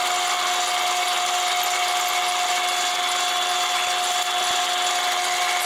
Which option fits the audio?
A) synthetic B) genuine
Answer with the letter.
B